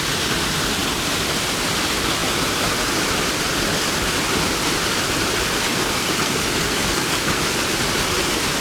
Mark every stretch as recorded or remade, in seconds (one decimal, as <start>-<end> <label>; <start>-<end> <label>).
0.0-5.7 recorded; 5.7-7.4 remade; 7.4-8.6 recorded